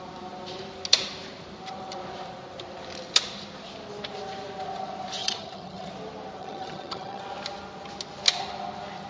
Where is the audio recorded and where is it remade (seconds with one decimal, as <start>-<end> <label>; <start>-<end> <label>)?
0.0-5.2 recorded; 5.2-5.9 remade; 5.9-6.4 recorded; 6.4-7.2 remade; 7.2-9.1 recorded